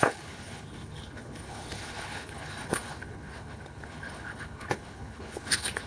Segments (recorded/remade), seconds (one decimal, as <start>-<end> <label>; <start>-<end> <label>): 0.0-5.9 remade